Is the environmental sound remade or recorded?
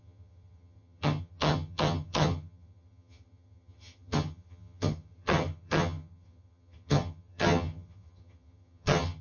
remade